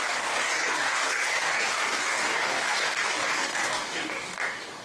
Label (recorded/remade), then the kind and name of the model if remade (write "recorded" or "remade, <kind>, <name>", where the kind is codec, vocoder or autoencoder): remade, codec, DAC